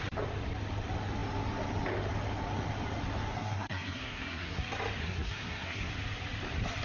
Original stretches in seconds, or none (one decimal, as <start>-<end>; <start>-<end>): 0.0-3.3; 4.6-5.0; 5.9-6.8